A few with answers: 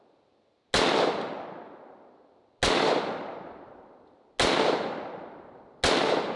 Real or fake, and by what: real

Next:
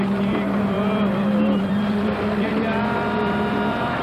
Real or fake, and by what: fake, vocoder, BigVGAN v2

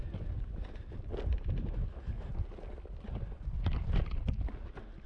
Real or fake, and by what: real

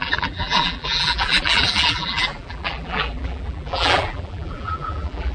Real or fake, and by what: fake, vocoder, BigVGAN v2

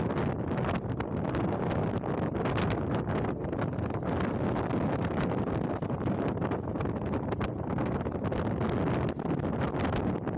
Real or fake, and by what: real